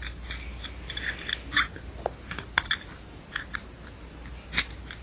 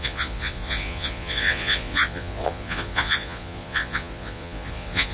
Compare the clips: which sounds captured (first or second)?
first